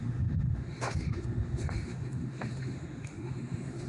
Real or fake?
fake